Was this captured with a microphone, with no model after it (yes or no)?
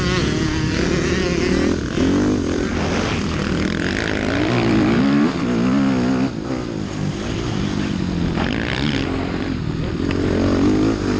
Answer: yes